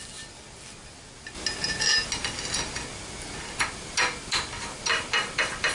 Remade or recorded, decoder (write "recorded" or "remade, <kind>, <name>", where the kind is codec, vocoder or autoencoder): recorded